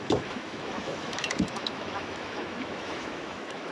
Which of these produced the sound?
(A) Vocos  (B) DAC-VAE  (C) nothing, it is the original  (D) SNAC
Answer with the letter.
B